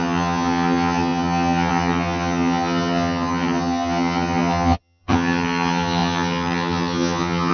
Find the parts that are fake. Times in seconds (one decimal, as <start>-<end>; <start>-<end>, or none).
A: 0.0-7.5